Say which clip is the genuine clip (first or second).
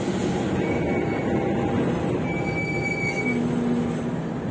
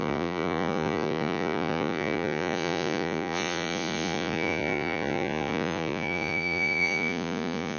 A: first